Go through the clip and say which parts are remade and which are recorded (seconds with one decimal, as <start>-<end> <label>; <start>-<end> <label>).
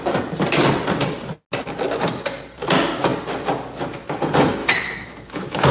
0.0-4.6 recorded; 4.6-5.7 remade